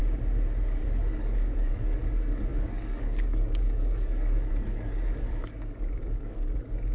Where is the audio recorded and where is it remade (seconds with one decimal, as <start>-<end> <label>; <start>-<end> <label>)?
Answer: 0.0-1.0 recorded; 1.0-6.9 remade